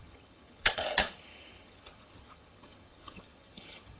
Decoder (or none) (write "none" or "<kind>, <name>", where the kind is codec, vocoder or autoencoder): vocoder, HiFi-GAN